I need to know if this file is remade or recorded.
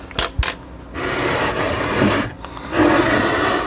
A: recorded